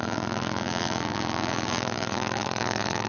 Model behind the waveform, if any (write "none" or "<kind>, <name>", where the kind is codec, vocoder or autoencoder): vocoder, BigVGAN v2